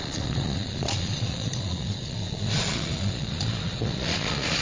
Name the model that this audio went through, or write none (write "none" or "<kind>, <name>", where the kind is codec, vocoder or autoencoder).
vocoder, Vocos